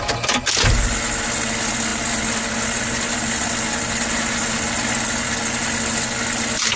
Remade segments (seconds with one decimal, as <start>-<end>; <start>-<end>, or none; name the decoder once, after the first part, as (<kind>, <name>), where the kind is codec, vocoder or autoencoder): none